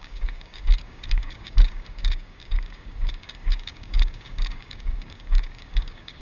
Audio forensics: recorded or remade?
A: remade